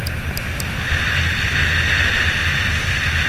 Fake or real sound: real